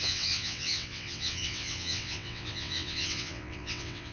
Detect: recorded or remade remade